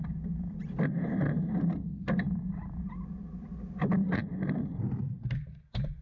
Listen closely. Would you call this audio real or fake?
real